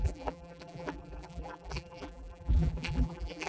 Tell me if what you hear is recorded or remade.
remade